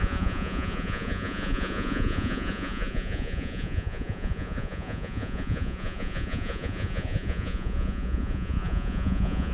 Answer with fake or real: fake